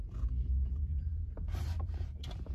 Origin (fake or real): fake